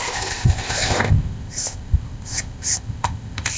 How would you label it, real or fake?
fake